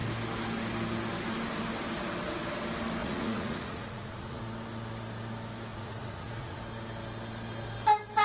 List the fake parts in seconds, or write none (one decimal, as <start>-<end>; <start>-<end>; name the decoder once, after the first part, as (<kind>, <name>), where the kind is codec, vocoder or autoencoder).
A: 3.0-4.4 (vocoder, Vocos); 5.7-6.6